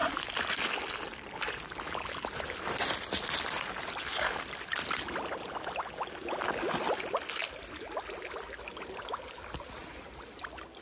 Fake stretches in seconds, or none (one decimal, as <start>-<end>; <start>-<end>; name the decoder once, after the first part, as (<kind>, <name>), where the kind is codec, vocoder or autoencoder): none